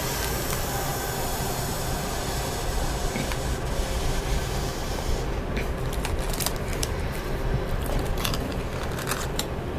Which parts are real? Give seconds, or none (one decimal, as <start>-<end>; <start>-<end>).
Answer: 0.0-6.7; 8.8-9.8

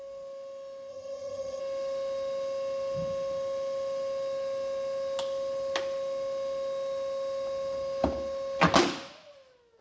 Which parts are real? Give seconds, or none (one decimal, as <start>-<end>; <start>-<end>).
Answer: 0.0-0.9; 1.6-9.8

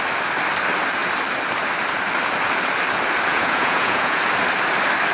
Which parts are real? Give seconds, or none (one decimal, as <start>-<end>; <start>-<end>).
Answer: 0.0-3.3; 4.2-5.1

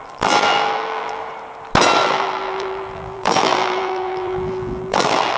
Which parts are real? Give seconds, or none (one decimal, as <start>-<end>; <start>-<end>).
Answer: 1.2-2.0

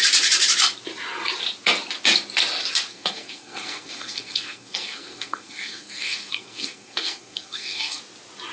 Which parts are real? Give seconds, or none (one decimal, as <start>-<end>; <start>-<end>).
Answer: 0.0-2.9; 8.0-8.5